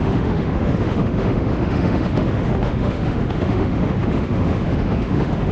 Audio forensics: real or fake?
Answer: fake